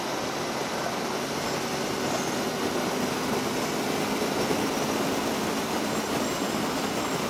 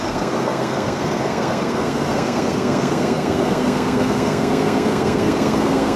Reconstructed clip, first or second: second